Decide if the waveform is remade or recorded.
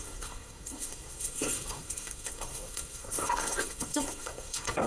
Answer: remade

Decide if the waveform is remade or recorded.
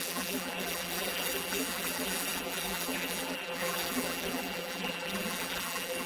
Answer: remade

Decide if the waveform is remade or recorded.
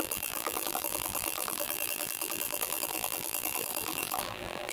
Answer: remade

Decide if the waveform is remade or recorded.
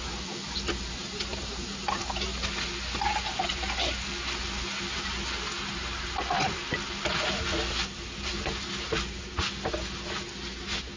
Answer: recorded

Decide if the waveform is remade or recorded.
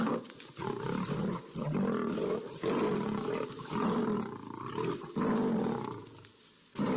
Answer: recorded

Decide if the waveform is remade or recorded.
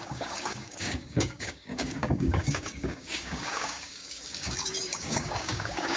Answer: remade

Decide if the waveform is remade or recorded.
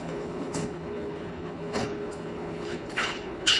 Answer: remade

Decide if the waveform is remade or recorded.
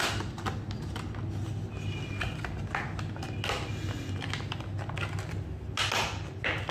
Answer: recorded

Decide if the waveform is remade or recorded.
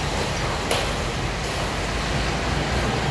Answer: recorded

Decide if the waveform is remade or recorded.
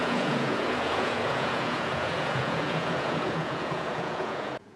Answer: remade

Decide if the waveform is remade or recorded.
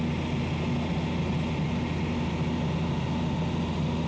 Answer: recorded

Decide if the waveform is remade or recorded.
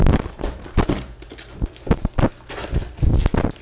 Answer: recorded